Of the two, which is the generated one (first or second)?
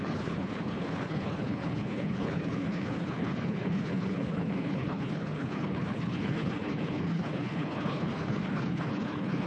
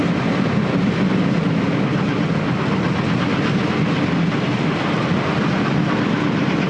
first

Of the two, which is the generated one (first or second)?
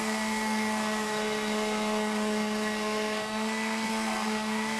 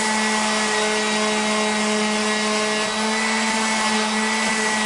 first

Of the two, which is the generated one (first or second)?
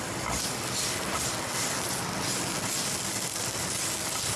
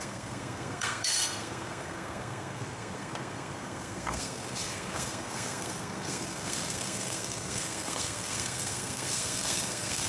second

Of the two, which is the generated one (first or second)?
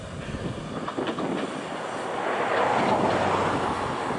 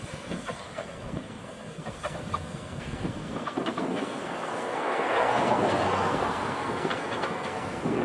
second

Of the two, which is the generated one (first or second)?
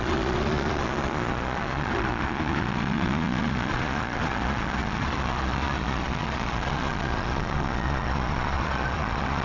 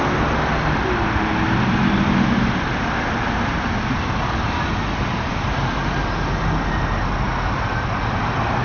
first